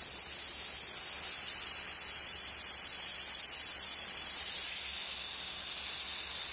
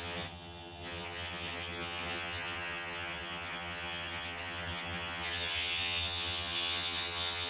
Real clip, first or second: first